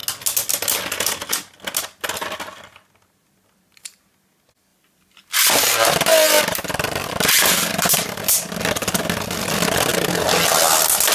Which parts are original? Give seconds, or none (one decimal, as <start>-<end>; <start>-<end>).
0.0-4.7; 8.2-11.1